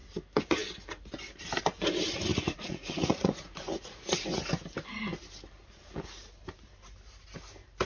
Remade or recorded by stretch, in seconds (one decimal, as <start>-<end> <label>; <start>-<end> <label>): 0.0-2.3 recorded; 2.3-4.5 remade; 4.5-7.8 recorded